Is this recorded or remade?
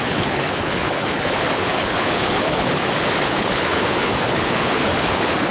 remade